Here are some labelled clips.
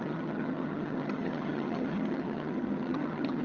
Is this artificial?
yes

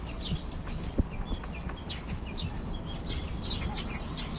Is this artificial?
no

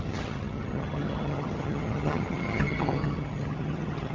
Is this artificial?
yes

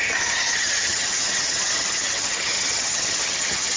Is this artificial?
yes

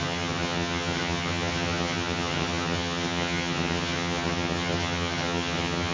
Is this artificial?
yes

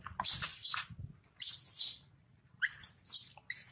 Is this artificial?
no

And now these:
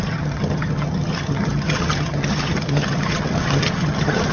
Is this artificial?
yes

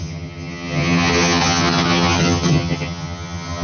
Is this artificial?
yes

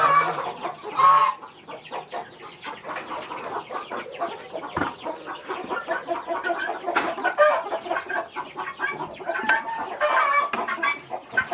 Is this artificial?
no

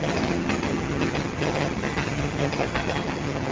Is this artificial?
yes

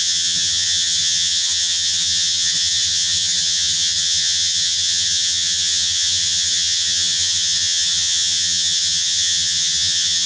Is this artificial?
yes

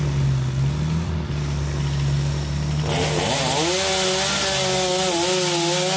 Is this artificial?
no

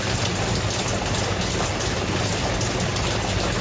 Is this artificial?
no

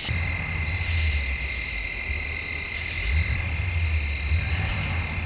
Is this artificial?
no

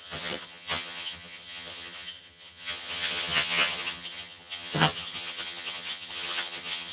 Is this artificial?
yes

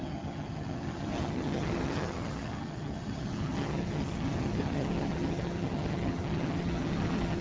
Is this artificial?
yes